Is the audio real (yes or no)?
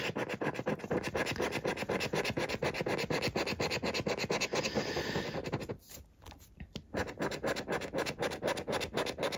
yes